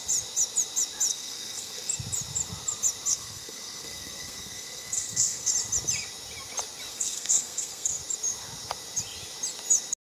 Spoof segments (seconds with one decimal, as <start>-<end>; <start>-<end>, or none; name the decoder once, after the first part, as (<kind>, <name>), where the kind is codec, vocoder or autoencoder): 1.1-1.9 (codec, SNAC); 3.1-5.5; 6.9-8.0